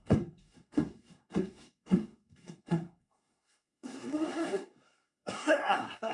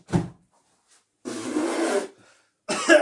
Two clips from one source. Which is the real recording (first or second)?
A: second